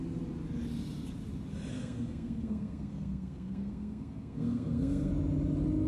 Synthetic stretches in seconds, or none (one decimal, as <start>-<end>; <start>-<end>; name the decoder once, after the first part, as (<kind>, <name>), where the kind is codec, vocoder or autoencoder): 1.7-5.1 (codec, SNAC)